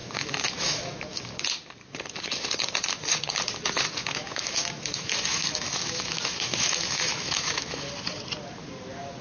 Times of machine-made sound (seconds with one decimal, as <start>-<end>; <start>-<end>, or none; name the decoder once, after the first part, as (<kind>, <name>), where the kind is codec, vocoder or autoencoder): 0.0-1.4 (autoencoder, DAC-VAE); 4.0-7.9